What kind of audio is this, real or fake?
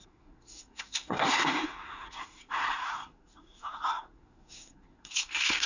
fake